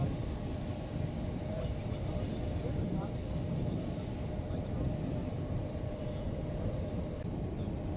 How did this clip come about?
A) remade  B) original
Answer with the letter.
B